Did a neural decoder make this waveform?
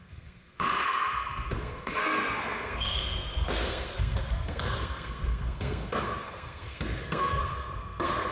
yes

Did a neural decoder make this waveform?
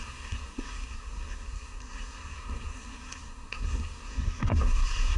yes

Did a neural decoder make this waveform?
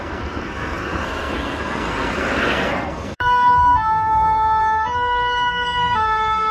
yes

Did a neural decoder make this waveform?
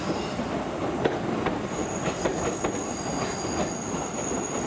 no